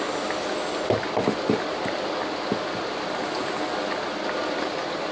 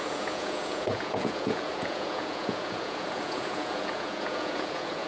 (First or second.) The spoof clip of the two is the second